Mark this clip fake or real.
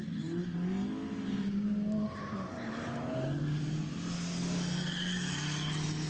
real